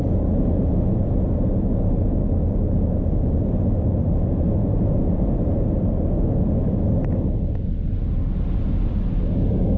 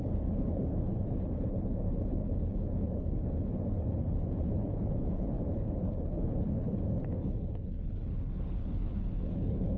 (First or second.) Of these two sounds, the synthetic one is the second